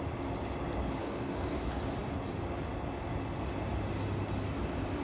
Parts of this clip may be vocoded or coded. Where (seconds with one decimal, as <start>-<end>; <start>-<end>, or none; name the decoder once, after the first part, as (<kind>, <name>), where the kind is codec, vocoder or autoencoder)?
1.0-1.6 (codec, DAC)